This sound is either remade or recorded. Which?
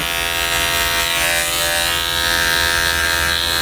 recorded